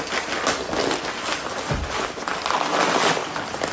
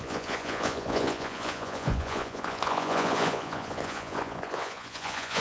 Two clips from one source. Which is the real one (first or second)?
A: first